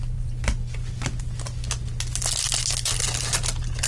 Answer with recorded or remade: recorded